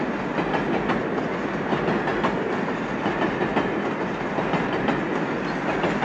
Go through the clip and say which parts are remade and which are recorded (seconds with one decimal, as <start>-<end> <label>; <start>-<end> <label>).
0.0-6.0 recorded